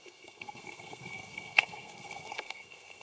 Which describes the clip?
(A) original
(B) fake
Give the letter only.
B